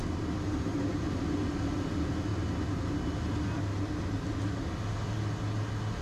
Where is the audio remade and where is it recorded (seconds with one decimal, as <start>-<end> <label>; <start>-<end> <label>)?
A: 0.0-6.0 recorded